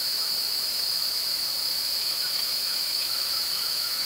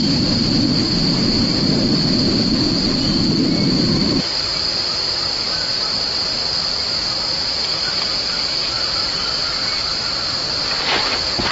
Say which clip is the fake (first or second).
first